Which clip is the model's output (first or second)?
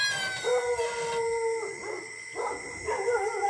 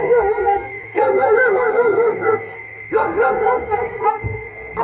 second